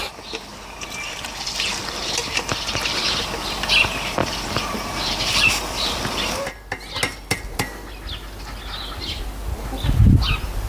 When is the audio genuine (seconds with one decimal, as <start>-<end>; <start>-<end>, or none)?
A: 0.0-2.2; 3.2-4.2; 5.5-10.7